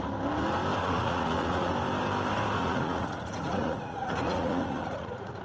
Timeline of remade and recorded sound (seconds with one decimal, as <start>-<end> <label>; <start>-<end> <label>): 0.0-0.8 recorded; 0.8-1.7 remade; 1.7-2.6 recorded; 2.6-5.4 remade